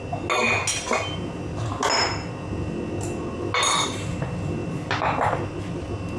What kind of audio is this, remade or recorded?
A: recorded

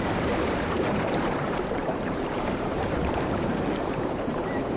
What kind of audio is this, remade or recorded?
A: remade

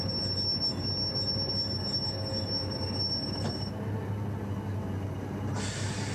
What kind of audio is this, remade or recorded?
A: recorded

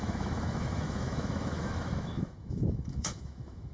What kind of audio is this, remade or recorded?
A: remade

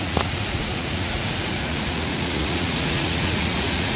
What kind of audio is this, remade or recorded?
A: remade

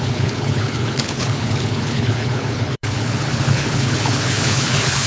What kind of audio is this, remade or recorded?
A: remade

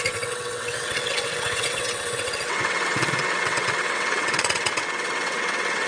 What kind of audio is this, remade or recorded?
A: remade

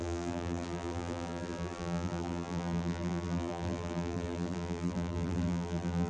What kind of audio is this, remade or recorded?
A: remade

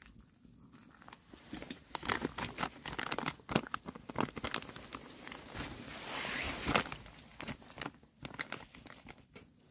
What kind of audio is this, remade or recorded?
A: recorded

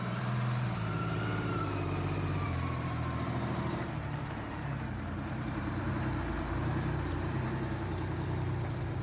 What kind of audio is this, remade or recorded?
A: remade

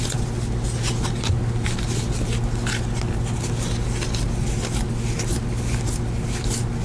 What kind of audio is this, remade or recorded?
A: recorded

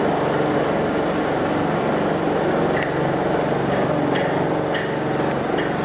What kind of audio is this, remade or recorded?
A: recorded